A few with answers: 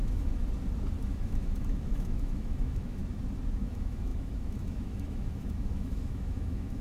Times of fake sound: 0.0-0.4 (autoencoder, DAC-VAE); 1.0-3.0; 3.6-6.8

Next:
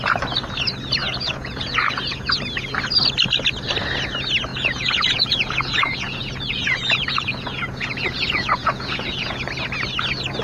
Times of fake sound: 1.0-2.4 (vocoder, Vocos); 4.5-9.4

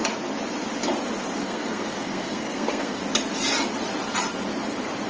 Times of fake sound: 1.4-3.0 (codec, SNAC)

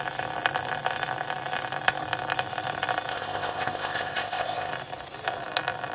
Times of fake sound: 3.1-4.7 (codec, ZipCodec)

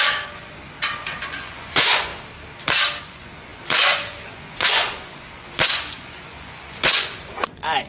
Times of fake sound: 0.0-2.1 (vocoder, Vocos); 3.0-7.9

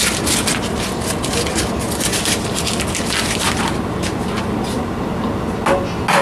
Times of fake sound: none